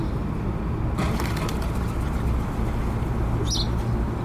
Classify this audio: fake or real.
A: real